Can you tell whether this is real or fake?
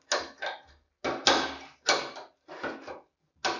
real